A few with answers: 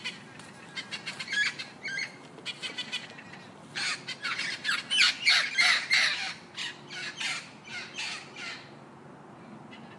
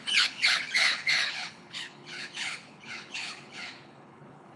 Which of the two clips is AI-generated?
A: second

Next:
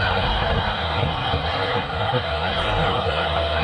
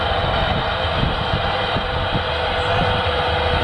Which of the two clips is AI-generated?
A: first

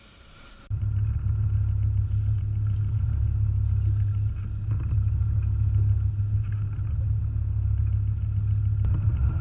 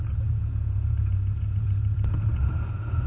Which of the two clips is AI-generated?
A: second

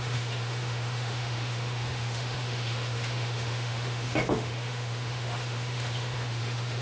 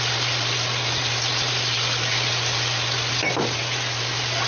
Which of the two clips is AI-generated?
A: first